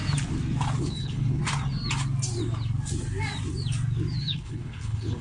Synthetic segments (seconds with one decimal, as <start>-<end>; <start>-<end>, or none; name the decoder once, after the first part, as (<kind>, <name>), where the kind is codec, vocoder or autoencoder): 0.8-1.4 (codec, HILCodec); 4.2-5.2